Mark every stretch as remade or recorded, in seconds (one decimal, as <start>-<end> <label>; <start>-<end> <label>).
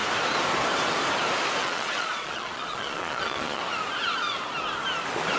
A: 0.0-1.6 recorded; 1.6-3.6 remade; 3.6-5.4 recorded